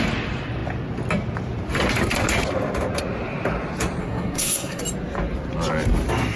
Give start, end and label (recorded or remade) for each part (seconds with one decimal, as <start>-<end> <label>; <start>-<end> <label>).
0.0-4.0 recorded; 4.0-4.8 remade; 4.8-6.4 recorded